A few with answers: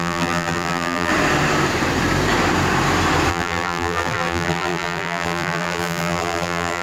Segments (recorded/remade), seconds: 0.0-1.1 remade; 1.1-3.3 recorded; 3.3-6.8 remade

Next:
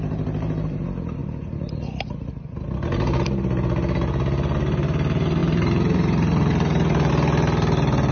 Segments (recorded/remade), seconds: 0.0-1.2 recorded; 1.2-1.8 remade; 1.8-5.4 recorded; 5.4-7.1 remade; 7.1-8.1 recorded

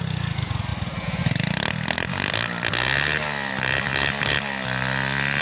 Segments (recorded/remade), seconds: 0.0-5.4 recorded

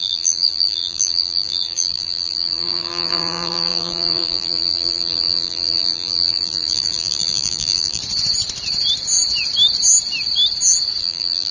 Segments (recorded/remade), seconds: 0.0-8.0 remade; 8.0-11.0 recorded; 11.0-11.5 remade

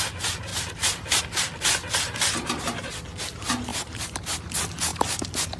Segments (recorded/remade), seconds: 0.0-0.5 recorded; 0.5-1.2 remade; 1.2-1.8 recorded; 1.8-2.9 remade; 2.9-3.7 recorded; 3.7-4.4 remade; 4.4-4.9 recorded; 4.9-5.6 remade

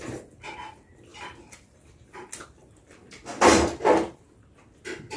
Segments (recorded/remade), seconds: 0.0-1.1 recorded; 1.1-2.7 remade; 2.7-3.5 recorded; 3.5-4.6 remade; 4.6-5.2 recorded

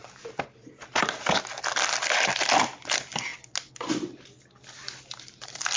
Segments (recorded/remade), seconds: 0.0-1.0 recorded; 1.0-3.3 remade; 3.3-5.0 recorded; 5.0-5.8 remade

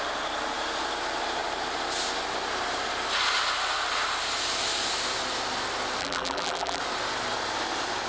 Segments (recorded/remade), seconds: 0.0-6.0 recorded; 6.0-6.8 remade; 6.8-8.1 recorded